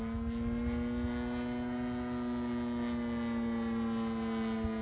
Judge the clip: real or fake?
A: real